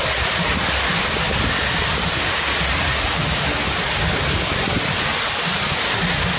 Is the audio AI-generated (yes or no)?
no